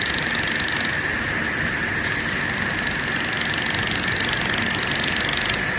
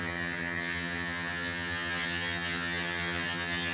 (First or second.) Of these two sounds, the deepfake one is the second